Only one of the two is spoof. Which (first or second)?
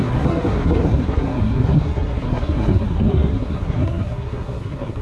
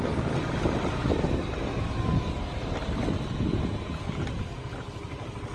first